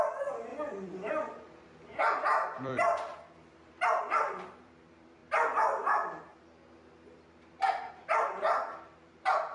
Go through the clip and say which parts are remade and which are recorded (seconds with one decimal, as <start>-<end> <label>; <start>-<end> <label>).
0.0-0.5 remade; 0.5-2.0 recorded; 2.0-5.2 remade; 5.2-7.9 recorded; 7.9-9.5 remade